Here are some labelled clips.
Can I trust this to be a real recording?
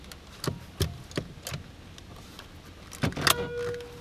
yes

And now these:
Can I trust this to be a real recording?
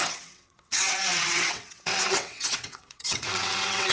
no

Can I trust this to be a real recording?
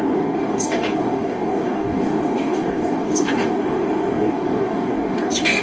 no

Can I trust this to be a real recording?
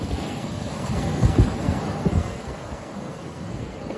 no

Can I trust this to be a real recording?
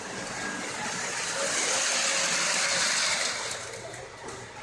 yes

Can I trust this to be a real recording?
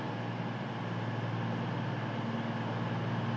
yes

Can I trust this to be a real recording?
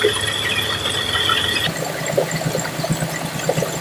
yes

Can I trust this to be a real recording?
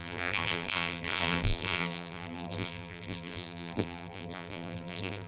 no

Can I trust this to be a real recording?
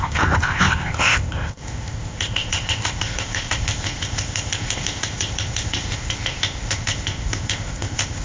no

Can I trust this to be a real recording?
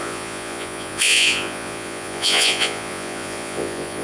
no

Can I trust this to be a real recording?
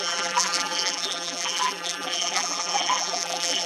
no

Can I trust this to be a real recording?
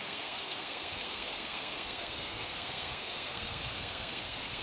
no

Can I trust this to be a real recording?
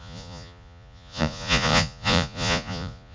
no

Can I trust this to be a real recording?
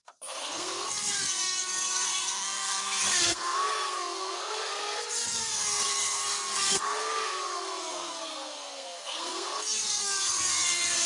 no